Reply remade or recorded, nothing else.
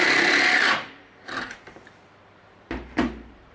remade